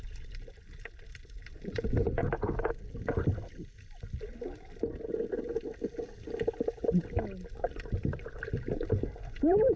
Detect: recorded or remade recorded